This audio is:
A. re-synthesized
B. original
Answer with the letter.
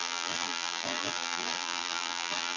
A